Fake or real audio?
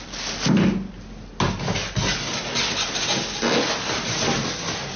real